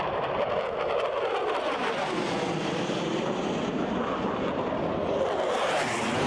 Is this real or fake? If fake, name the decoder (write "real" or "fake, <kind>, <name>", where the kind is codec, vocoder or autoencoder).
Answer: real